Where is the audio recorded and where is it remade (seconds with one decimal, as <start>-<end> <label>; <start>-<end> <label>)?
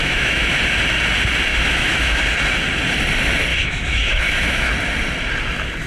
0.0-0.5 remade; 0.5-1.5 recorded; 1.5-2.2 remade; 2.2-3.5 recorded; 3.5-4.7 remade; 4.7-5.9 recorded